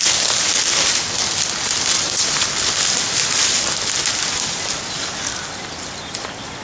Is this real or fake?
real